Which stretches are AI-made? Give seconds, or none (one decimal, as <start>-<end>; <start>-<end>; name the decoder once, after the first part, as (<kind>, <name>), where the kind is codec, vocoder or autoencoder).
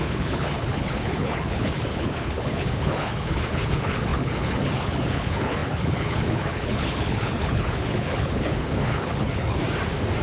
0.0-9.6 (codec, HILCodec)